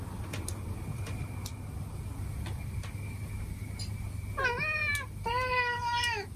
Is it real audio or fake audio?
real